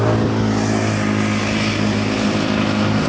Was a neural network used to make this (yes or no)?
no